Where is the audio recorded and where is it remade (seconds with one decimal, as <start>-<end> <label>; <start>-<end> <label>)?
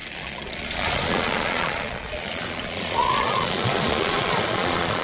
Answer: 0.0-5.0 remade